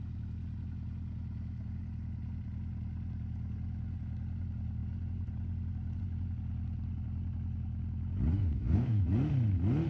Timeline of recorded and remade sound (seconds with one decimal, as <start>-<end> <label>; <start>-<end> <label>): 0.0-8.3 recorded; 8.3-9.0 remade; 9.0-9.9 recorded